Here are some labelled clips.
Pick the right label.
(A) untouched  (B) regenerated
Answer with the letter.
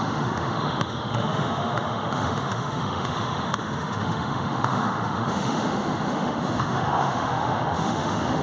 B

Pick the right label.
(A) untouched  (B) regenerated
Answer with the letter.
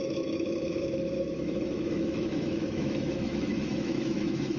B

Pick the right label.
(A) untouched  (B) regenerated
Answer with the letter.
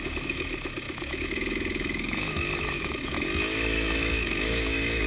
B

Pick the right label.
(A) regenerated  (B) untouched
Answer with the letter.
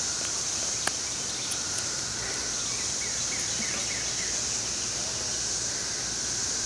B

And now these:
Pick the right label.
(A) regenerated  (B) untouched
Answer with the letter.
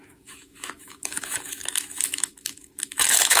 A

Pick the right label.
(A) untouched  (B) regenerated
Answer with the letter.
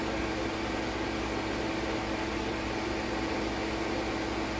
A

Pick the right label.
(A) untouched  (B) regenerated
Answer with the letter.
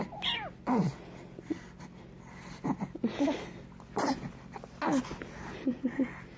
A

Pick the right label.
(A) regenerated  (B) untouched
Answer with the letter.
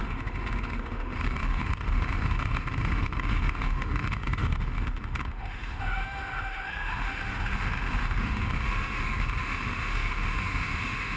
A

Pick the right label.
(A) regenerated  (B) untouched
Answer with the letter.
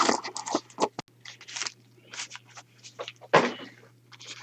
B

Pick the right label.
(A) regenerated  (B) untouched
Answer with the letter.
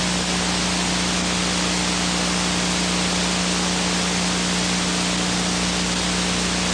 B